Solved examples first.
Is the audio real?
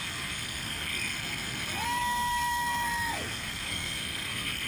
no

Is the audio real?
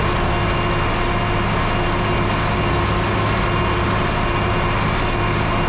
yes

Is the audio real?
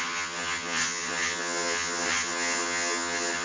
no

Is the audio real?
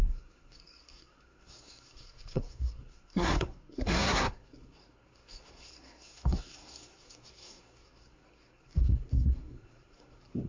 no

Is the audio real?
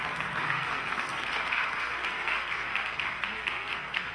no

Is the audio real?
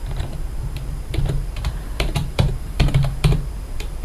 no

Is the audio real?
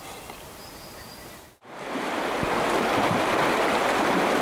yes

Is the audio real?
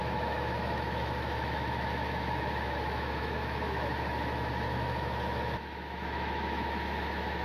no